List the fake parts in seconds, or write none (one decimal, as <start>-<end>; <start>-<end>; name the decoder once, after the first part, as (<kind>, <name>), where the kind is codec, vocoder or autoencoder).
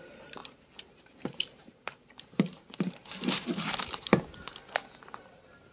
0.0-4.1 (vocoder, BigVGAN v2); 5.0-5.7